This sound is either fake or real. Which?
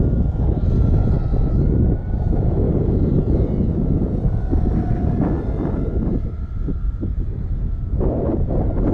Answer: real